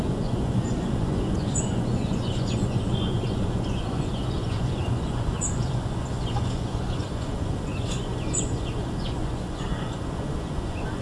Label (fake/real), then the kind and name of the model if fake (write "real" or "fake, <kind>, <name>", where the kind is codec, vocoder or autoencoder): fake, vocoder, Vocos